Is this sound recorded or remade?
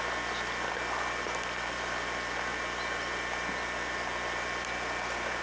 recorded